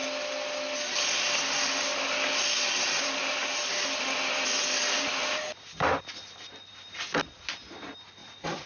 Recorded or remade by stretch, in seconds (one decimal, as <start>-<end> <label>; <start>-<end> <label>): 0.0-8.2 recorded; 8.2-8.7 remade